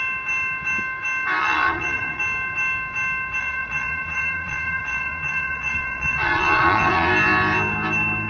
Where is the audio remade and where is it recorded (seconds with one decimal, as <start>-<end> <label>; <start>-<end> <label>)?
0.0-1.4 recorded; 1.4-2.2 remade; 2.2-3.4 recorded; 3.4-7.1 remade; 7.1-8.3 recorded